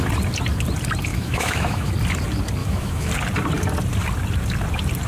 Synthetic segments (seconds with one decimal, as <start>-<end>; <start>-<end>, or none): 1.1-1.9; 2.6-3.1